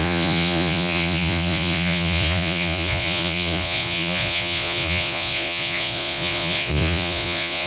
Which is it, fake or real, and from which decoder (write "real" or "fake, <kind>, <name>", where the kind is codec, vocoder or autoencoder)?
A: fake, vocoder, Vocos